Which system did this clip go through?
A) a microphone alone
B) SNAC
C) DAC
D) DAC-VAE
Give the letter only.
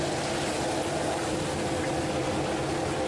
A